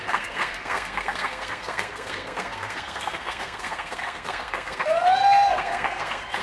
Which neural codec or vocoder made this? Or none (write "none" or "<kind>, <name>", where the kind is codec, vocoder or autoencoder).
codec, SNAC